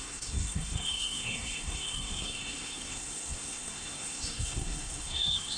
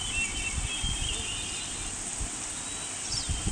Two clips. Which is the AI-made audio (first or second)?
first